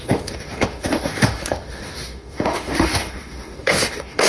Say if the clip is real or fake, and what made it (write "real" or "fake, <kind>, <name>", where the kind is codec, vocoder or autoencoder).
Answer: fake, autoencoder, DAC-VAE